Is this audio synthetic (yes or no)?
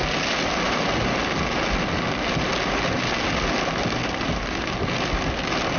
no